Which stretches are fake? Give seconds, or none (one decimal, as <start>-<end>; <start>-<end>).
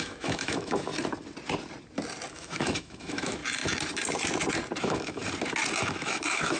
0.0-0.9; 2.3-3.4; 4.8-5.2; 5.8-6.6